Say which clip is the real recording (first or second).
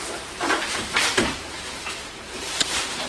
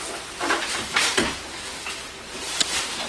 second